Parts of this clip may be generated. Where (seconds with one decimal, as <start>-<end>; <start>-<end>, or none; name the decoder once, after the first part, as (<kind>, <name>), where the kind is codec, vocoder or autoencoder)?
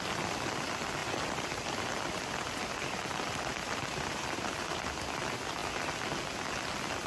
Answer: 0.0-5.6 (vocoder, BigVGAN v2)